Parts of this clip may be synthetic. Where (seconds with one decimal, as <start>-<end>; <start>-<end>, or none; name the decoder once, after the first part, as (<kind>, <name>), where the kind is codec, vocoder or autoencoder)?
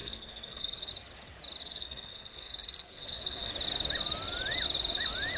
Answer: 0.0-0.9 (codec, SNAC); 1.6-3.5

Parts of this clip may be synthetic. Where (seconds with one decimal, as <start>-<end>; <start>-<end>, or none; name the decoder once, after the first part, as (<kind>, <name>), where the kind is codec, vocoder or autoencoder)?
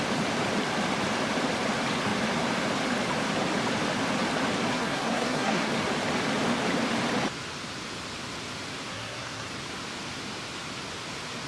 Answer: 4.7-5.7 (codec, SNAC); 8.9-9.5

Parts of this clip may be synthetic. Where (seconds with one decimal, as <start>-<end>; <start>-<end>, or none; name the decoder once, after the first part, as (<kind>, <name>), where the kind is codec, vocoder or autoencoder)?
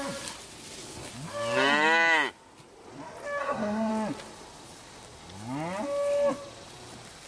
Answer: 3.4-3.9 (codec, SNAC)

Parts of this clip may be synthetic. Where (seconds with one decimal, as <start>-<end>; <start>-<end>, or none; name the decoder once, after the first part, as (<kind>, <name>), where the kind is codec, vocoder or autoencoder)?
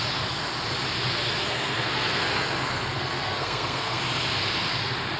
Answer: 1.4-4.0 (codec, SNAC)